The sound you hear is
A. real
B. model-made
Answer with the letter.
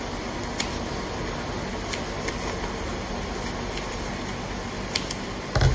A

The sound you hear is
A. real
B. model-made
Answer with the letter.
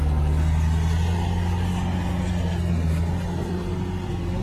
A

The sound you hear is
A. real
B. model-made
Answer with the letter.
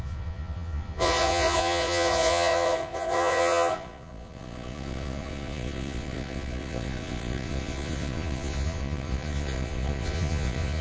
B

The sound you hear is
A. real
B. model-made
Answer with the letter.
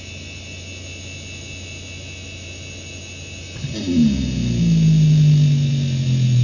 A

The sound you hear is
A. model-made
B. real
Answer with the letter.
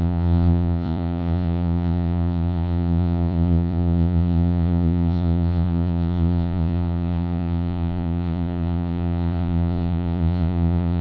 A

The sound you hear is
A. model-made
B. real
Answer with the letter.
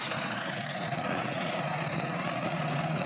A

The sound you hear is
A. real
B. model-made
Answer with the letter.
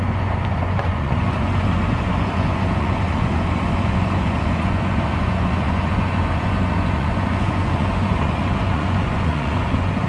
B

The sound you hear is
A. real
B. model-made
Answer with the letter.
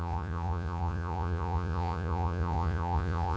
B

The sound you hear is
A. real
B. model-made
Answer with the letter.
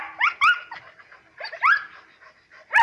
A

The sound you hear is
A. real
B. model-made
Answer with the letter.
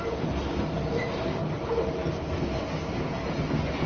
A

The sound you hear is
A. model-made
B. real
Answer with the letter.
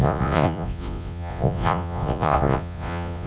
A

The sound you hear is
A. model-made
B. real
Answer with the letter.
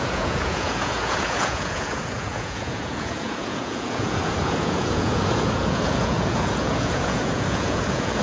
A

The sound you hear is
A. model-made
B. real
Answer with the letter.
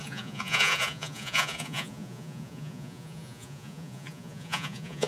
A